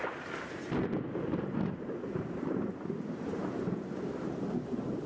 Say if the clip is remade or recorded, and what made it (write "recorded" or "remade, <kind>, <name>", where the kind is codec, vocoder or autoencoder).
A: remade, vocoder, BigVGAN v2